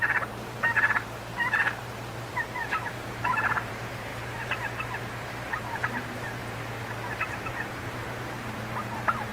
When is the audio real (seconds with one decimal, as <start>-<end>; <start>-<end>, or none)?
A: 0.7-1.8; 6.4-7.3